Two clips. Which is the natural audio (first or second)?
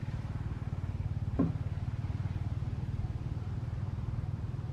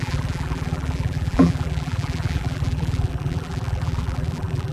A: first